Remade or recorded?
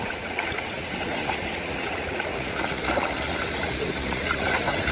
remade